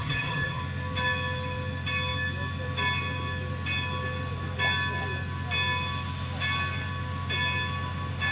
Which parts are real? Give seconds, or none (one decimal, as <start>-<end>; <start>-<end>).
0.6-8.3